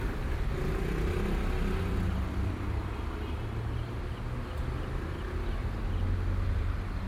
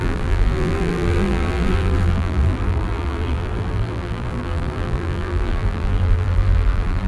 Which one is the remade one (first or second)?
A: second